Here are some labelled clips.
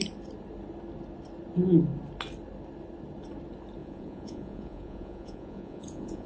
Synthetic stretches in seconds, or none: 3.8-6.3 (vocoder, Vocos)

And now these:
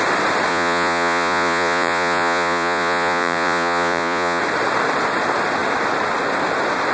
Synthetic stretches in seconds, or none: 0.5-4.4 (vocoder, Vocos)

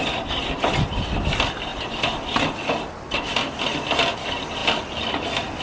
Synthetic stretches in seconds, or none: none